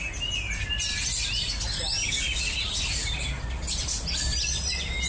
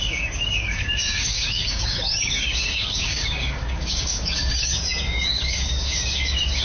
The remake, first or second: second